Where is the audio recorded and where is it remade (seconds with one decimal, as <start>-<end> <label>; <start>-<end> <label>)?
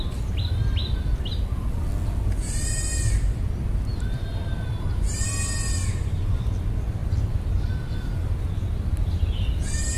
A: 0.0-10.0 recorded